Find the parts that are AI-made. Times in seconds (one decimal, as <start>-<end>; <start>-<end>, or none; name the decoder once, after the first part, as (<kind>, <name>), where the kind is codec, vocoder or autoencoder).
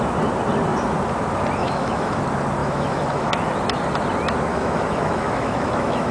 1.6-2.2 (autoencoder, DAC-VAE); 2.6-3.3; 4.5-6.1